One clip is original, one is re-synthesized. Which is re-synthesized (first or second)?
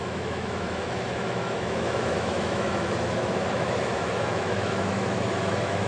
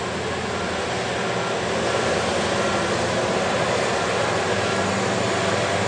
first